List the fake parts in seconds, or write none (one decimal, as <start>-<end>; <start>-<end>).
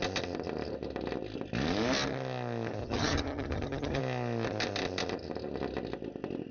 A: 2.8-4.0